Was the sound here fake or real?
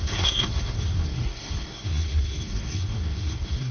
fake